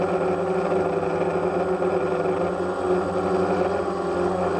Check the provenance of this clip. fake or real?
real